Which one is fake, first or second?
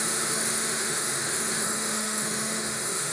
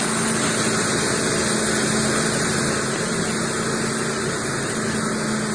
first